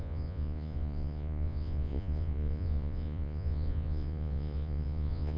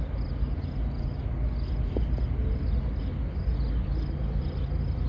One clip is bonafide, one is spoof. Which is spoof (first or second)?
first